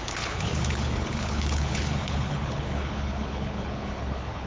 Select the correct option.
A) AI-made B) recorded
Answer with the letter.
A